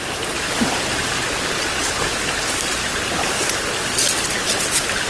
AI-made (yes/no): no